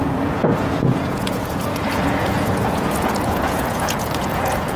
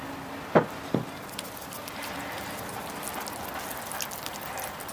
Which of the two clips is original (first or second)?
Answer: second